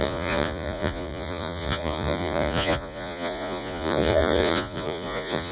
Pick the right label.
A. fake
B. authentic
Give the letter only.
A